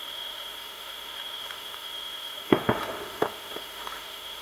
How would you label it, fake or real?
fake